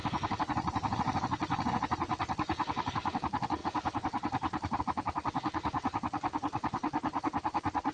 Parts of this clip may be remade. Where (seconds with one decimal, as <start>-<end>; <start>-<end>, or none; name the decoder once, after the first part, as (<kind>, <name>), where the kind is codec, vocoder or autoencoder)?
none